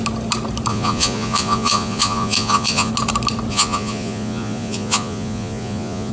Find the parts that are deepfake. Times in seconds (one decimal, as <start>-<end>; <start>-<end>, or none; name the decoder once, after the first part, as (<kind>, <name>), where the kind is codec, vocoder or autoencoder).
0.7-2.9 (vocoder, Vocos); 3.5-6.1